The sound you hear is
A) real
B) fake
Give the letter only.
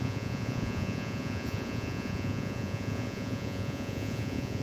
B